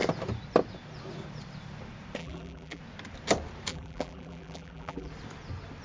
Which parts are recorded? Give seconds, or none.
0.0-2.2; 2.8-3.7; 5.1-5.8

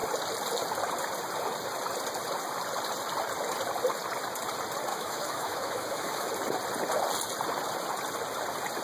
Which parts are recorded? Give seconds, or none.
0.0-4.9; 6.3-8.8

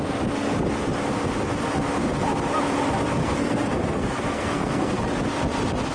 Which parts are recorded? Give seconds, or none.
0.0-3.2; 5.0-5.9

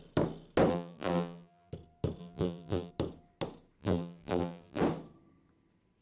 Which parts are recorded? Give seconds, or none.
0.0-0.7; 1.7-2.2; 2.9-3.8; 4.8-6.0

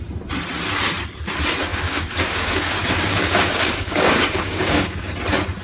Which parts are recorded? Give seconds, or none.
0.0-1.7; 5.1-5.6